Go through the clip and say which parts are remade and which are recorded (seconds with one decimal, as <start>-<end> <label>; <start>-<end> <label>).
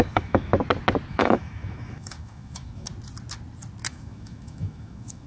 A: 0.0-0.5 remade; 0.5-1.1 recorded; 1.1-2.9 remade; 2.9-3.9 recorded; 3.9-5.3 remade